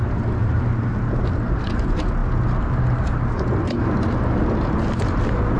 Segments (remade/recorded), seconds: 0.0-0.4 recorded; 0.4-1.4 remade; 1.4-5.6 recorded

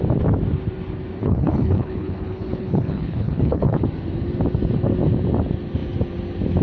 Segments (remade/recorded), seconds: 0.0-1.2 recorded; 1.2-3.8 remade; 3.8-6.6 recorded

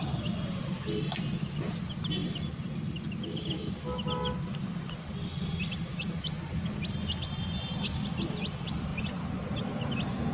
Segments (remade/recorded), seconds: 0.0-10.3 recorded

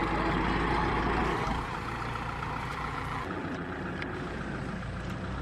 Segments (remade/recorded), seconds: 0.0-2.7 recorded; 2.7-3.8 remade; 3.8-5.4 recorded

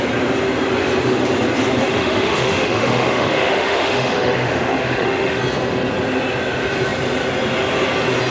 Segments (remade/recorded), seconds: 0.0-1.8 recorded; 1.8-5.4 remade; 5.4-8.3 recorded

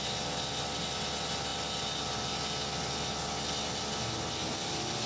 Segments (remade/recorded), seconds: 0.0-5.1 recorded